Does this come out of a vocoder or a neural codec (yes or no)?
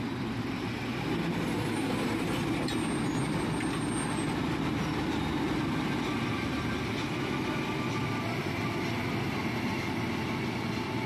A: no